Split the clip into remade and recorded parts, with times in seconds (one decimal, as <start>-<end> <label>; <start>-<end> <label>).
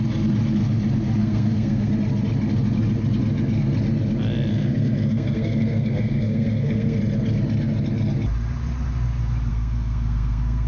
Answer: 0.0-1.2 recorded; 1.2-1.9 remade; 1.9-4.5 recorded; 4.5-7.0 remade; 7.0-9.5 recorded; 9.5-10.7 remade